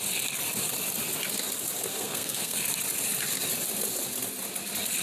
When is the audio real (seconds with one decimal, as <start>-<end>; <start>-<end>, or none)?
0.0-1.9; 2.6-5.0